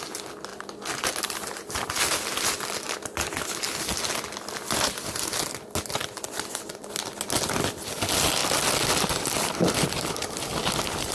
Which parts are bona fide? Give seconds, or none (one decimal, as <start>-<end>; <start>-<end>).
0.0-11.1